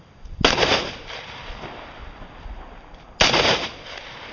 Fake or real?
real